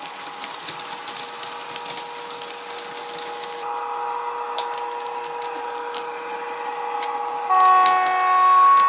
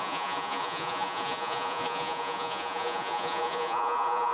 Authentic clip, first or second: first